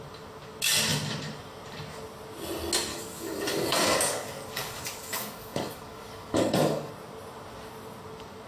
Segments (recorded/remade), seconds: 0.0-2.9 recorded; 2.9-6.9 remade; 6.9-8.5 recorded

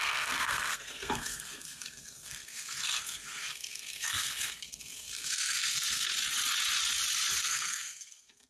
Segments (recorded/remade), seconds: 0.0-6.1 remade; 6.1-7.4 recorded; 7.4-8.5 remade

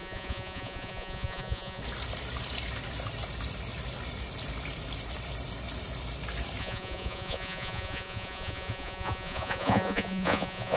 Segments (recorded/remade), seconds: 0.0-1.8 remade; 1.8-6.6 recorded; 6.6-10.8 remade